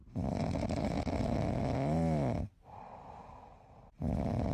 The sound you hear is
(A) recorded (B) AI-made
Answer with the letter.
A